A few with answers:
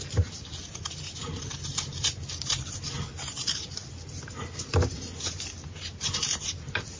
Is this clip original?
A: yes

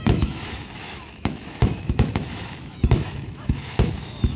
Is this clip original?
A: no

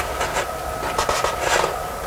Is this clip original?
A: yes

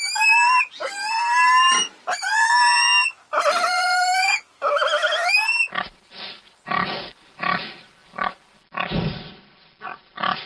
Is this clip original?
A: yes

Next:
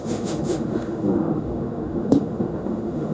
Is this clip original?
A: no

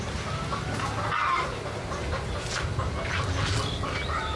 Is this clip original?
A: yes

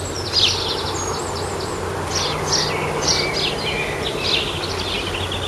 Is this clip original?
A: yes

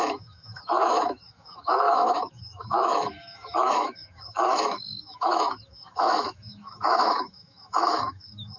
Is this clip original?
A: no